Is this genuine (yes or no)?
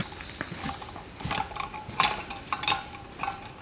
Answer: yes